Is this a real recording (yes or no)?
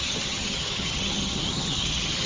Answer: no